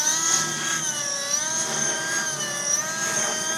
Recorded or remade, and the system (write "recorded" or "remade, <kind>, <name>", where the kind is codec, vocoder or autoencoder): recorded